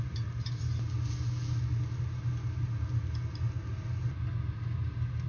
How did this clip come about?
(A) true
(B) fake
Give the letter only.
A